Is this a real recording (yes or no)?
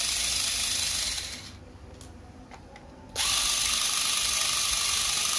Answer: no